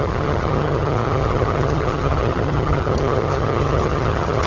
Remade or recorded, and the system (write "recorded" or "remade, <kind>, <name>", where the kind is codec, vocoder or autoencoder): remade, vocoder, HiFi-GAN